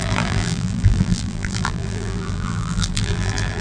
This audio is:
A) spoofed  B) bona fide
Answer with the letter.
A